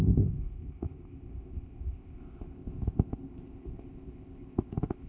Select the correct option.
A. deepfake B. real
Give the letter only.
A